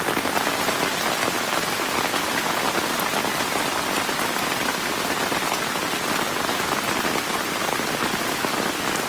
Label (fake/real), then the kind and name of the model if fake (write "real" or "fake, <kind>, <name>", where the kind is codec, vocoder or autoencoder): real